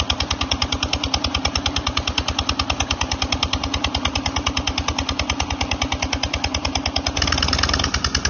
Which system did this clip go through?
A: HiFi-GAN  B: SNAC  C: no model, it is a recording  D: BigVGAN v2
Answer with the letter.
C